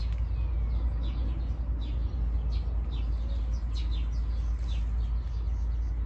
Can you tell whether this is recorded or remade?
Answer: recorded